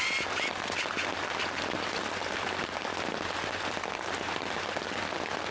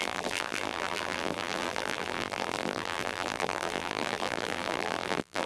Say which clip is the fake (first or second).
second